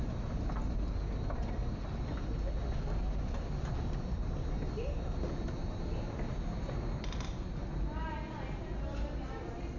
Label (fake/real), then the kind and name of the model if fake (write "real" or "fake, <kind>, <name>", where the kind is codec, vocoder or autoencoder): real